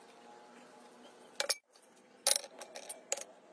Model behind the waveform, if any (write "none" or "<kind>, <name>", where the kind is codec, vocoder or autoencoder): none